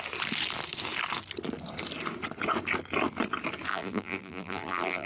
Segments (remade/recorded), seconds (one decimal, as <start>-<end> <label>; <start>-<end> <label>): 0.0-3.7 recorded; 3.7-5.1 remade